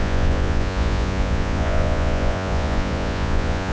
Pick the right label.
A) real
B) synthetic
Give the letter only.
B